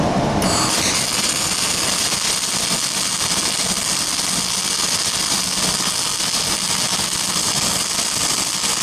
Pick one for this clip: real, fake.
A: real